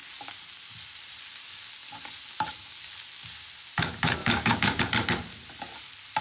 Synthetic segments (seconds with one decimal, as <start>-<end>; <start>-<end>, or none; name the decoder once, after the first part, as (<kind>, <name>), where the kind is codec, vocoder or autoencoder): 4.2-4.8 (codec, DAC)